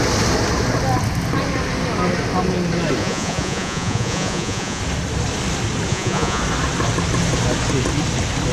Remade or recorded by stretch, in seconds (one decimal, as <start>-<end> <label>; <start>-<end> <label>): 0.0-3.0 recorded; 3.0-4.8 remade; 4.8-5.9 recorded; 5.9-6.4 remade; 6.4-8.5 recorded